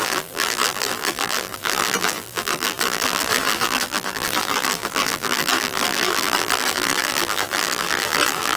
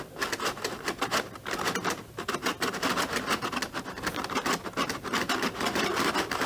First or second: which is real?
second